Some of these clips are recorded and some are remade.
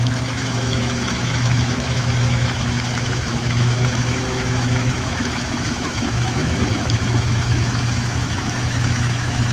remade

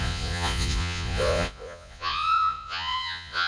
remade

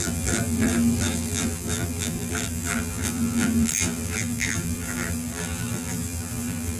remade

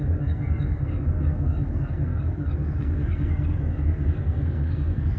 remade